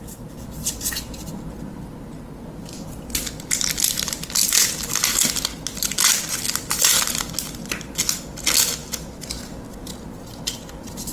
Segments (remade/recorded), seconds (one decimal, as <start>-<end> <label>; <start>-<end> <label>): 0.0-11.1 recorded